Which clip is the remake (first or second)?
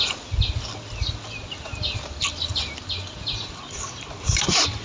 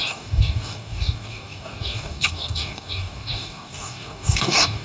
second